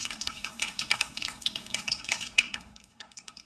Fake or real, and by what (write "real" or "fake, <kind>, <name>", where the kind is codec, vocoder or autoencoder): fake, codec, SNAC